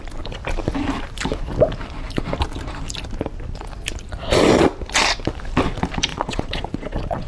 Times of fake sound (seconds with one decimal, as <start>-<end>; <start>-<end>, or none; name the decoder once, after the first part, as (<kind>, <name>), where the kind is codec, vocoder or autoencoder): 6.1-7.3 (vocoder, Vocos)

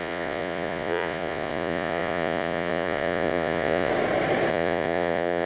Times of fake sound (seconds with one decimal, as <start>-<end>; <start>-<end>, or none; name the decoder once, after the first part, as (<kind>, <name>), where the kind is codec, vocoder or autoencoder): 0.0-3.9 (vocoder, Vocos); 4.5-5.5

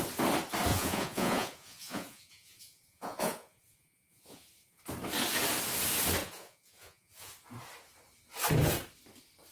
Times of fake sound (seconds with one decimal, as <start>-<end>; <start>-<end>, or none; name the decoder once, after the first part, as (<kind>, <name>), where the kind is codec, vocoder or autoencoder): 0.7-4.8 (vocoder, Vocos); 6.2-7.3

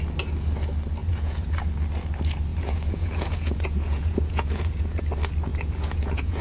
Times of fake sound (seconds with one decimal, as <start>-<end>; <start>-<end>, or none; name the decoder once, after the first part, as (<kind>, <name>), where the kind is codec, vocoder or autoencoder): 1.0-1.6 (vocoder, Vocos); 2.5-5.0; 5.5-6.4

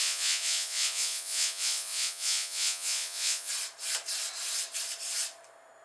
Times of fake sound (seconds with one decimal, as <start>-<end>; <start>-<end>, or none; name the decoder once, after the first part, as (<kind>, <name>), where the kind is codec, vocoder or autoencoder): 0.0-3.5 (vocoder, Vocos)

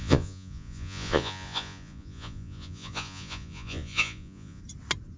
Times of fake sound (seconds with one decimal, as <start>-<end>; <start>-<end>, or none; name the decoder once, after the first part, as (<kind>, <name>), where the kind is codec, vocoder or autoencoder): 0.0-4.6 (vocoder, Vocos)

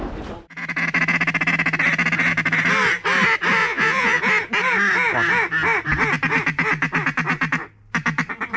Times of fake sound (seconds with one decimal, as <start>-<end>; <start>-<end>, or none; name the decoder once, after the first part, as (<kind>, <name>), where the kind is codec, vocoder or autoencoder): 3.6-4.2 (vocoder, Vocos)